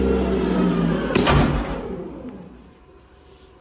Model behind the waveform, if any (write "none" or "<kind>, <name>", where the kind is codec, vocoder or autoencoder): none